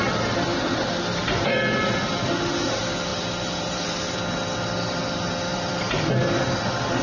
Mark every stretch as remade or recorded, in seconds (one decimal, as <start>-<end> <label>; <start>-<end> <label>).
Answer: 0.0-5.5 recorded; 5.5-6.2 remade; 6.2-7.0 recorded